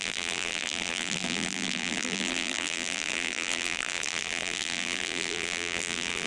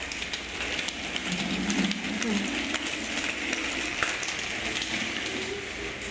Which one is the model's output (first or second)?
first